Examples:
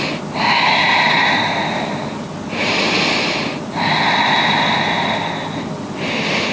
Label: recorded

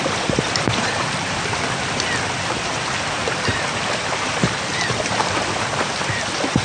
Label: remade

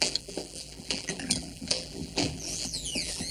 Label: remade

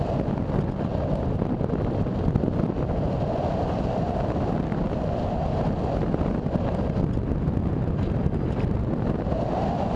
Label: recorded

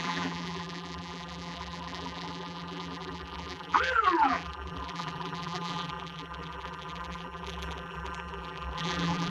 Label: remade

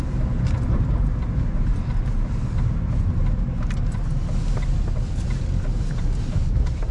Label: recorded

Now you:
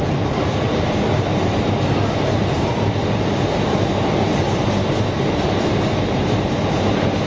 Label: remade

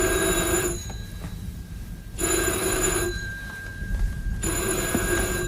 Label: remade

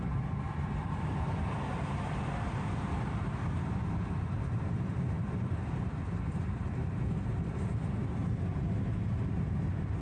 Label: remade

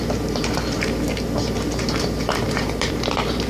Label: remade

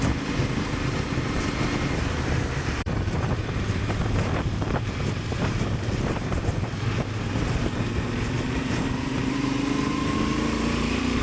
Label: remade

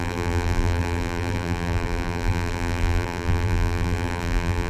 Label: remade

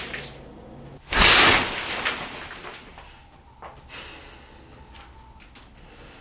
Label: recorded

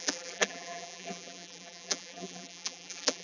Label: remade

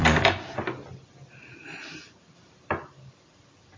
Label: remade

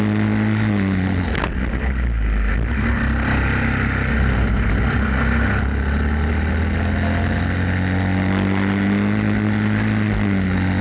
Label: recorded